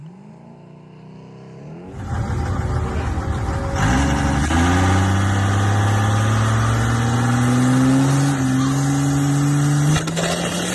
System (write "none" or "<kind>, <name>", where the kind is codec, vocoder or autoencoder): none